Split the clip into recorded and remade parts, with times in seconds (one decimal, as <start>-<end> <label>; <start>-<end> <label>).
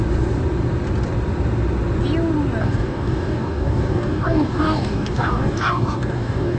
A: 0.0-2.6 recorded; 2.6-6.6 remade